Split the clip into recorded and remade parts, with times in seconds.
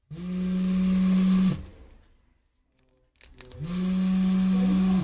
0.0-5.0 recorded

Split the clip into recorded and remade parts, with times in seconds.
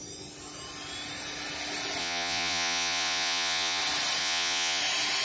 0.0-2.0 recorded; 2.0-3.8 remade; 3.8-4.2 recorded; 4.2-4.8 remade; 4.8-5.2 recorded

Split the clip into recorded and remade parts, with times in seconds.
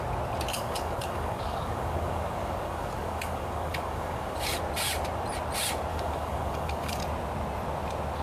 0.0-0.5 recorded; 0.5-4.6 remade; 4.6-5.9 recorded; 5.9-7.0 remade; 7.0-8.2 recorded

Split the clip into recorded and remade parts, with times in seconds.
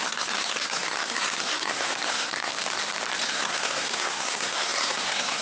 0.0-2.5 remade; 2.5-3.3 recorded; 3.3-5.4 remade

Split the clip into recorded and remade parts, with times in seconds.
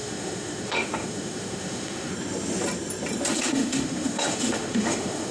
0.0-2.1 remade; 2.1-3.3 recorded; 3.3-5.3 remade